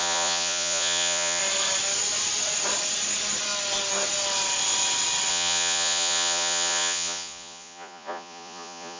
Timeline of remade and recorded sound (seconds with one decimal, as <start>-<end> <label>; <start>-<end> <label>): 0.0-1.4 remade; 1.4-5.3 recorded; 5.3-9.0 remade